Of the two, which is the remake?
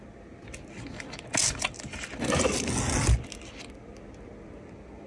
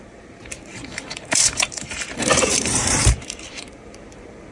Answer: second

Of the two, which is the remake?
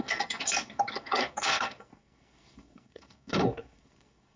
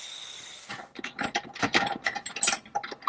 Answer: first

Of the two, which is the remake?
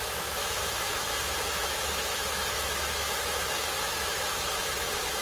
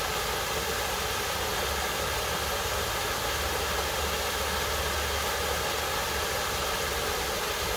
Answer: first